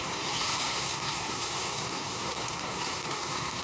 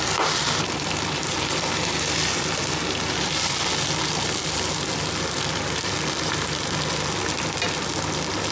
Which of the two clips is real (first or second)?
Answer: second